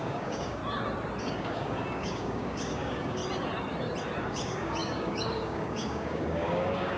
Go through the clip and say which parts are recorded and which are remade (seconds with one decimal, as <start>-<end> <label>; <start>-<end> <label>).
0.0-0.6 remade; 0.6-1.2 recorded; 1.2-3.2 remade; 3.2-4.2 recorded; 4.2-7.0 remade